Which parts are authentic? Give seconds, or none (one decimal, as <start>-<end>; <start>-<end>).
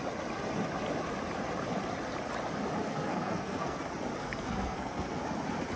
0.0-2.8; 3.8-4.2; 5.2-5.8